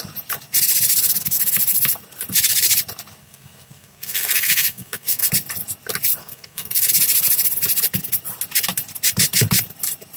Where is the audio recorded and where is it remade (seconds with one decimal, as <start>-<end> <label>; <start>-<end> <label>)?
0.0-3.2 recorded; 3.2-5.3 remade; 5.3-6.2 recorded; 6.2-6.9 remade; 6.9-10.2 recorded